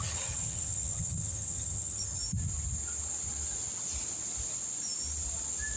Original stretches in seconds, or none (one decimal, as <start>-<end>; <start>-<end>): 2.2-5.8